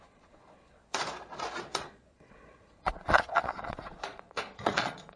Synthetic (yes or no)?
yes